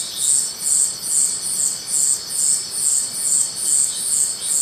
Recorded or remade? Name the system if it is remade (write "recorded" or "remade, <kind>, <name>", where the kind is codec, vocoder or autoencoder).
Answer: recorded